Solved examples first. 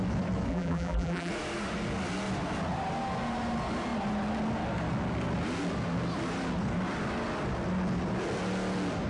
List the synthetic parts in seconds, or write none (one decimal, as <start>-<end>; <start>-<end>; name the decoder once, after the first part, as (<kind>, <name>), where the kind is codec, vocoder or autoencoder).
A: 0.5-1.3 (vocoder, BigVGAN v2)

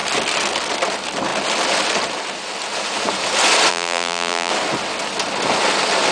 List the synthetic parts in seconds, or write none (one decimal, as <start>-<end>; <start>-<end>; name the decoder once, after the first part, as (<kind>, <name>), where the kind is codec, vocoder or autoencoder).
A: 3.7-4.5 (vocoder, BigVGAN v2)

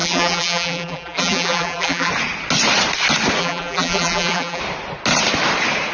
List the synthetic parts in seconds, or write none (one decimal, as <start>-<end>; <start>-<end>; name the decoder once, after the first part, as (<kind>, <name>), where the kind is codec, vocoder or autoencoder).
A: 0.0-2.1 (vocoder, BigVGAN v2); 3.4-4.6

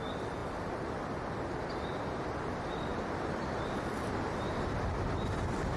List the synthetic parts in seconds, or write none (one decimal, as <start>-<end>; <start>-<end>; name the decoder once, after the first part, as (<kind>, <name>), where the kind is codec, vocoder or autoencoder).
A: 2.9-3.6 (vocoder, BigVGAN v2)

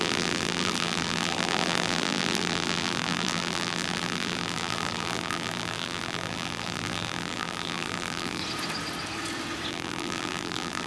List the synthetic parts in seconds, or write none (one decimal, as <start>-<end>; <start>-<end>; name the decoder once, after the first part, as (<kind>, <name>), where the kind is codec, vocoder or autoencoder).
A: 0.0-8.4 (vocoder, BigVGAN v2); 9.7-10.9

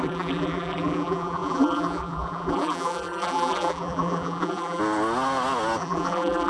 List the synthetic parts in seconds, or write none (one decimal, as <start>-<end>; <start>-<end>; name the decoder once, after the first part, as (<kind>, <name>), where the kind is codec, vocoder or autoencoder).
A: 0.0-4.8 (vocoder, BigVGAN v2); 5.8-6.5

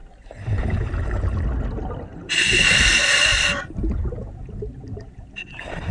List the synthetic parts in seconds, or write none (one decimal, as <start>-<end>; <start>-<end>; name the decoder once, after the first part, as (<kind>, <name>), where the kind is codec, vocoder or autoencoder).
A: 2.1-2.8 (vocoder, BigVGAN v2)